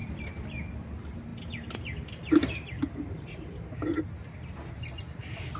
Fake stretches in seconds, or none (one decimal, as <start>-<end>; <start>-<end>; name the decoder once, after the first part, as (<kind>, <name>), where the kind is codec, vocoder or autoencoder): none